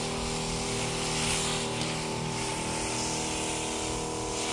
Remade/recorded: recorded